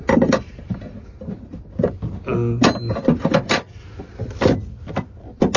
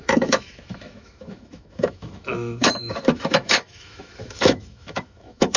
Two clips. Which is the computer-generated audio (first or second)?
second